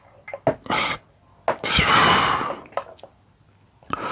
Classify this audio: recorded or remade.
recorded